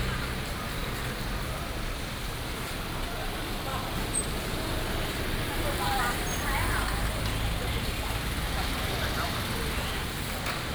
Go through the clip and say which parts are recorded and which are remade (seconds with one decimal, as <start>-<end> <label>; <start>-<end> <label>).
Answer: 0.0-0.8 recorded; 0.8-2.6 remade; 2.6-10.7 recorded